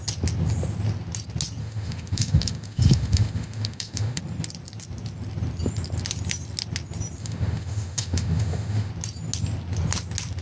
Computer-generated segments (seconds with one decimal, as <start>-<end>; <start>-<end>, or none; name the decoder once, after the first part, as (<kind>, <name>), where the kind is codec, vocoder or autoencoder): 1.6-4.2 (autoencoder, DAC-VAE); 7.2-8.9